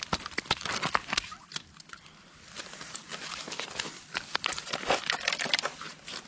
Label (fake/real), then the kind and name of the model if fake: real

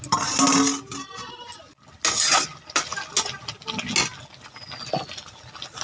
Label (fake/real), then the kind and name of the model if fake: real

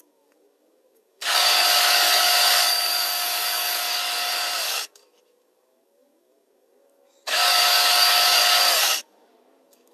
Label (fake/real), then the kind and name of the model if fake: fake, codec, DAC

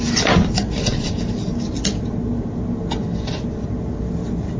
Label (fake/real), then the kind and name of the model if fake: real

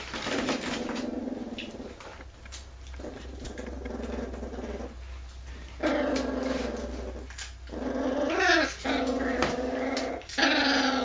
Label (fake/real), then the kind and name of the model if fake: real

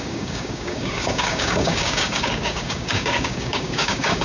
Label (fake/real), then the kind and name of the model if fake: fake, codec, DAC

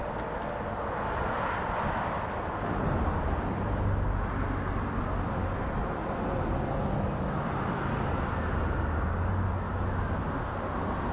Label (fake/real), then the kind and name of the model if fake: real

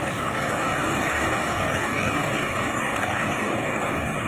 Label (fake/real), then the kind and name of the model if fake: fake, codec, DAC